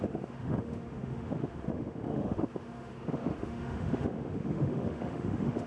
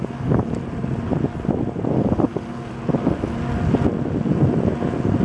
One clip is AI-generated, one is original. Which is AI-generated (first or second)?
first